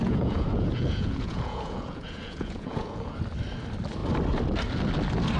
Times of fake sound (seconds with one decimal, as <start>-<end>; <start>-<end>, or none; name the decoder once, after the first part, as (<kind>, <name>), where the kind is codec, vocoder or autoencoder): 0.0-3.2 (vocoder, Vocos)